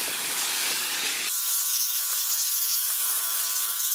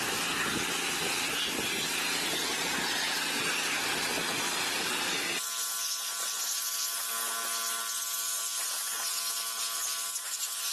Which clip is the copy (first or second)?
first